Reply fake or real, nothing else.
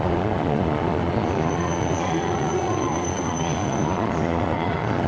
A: fake